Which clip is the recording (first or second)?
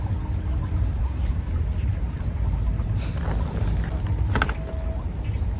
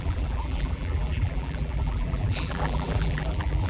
first